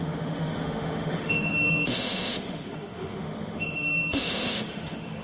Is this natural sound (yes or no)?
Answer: no